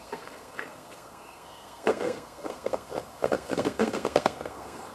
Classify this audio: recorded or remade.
remade